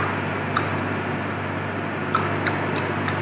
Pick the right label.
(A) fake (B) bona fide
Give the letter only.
B